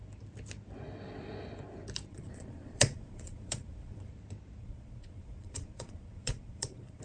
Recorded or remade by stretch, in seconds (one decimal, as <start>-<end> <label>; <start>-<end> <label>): 0.0-2.1 recorded; 2.1-4.1 remade; 4.1-4.6 recorded; 4.6-7.0 remade